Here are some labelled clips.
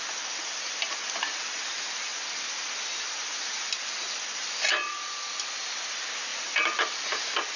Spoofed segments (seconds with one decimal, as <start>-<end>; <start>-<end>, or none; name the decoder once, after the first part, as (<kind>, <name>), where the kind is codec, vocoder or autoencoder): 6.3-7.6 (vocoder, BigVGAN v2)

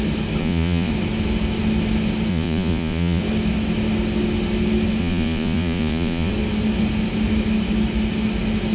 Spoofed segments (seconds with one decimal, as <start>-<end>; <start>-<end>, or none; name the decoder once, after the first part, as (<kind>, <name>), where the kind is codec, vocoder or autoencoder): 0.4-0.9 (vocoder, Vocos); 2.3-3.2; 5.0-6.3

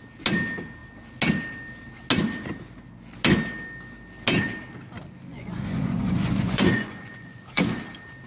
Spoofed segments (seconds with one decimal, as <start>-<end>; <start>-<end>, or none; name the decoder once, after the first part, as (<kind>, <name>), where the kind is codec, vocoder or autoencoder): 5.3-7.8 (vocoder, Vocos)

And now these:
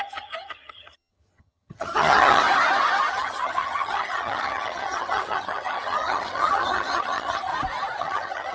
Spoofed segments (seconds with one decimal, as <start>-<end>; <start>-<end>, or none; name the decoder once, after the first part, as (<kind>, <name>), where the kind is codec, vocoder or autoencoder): 0.0-2.4 (vocoder, HiFi-GAN); 3.1-7.5; 8.0-8.5